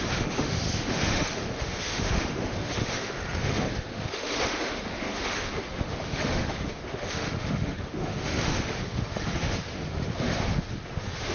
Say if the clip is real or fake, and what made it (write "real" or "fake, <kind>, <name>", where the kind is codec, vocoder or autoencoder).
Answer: fake, autoencoder, DAC-VAE